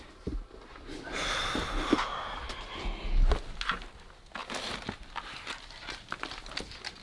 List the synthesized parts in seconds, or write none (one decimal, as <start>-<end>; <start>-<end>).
none